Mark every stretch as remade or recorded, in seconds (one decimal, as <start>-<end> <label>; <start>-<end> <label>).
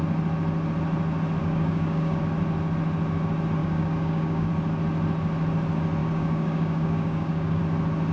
0.0-1.4 recorded; 1.4-2.2 remade; 2.2-3.6 recorded; 3.6-4.5 remade; 4.5-6.0 recorded; 6.0-7.6 remade; 7.6-8.1 recorded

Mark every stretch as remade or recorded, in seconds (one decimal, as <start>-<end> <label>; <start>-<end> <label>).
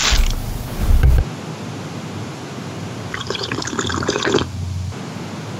0.0-5.6 recorded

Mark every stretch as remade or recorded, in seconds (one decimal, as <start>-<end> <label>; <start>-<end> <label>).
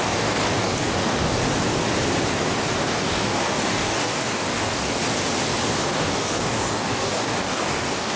0.0-1.4 remade; 1.4-2.8 recorded; 2.8-5.0 remade; 5.0-5.8 recorded; 5.8-8.2 remade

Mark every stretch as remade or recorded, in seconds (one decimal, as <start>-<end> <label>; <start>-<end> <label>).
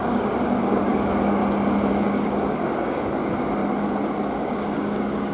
0.0-1.4 remade; 1.4-1.9 recorded; 1.9-3.6 remade; 3.6-4.4 recorded; 4.4-5.3 remade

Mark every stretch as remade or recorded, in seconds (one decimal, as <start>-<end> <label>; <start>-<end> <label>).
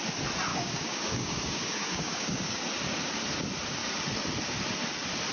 0.0-0.5 recorded; 0.5-2.6 remade; 2.6-5.3 recorded